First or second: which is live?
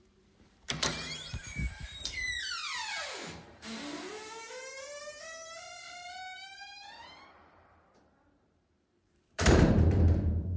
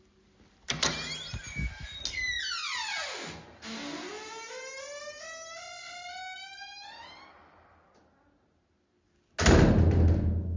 second